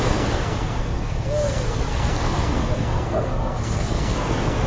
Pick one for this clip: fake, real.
fake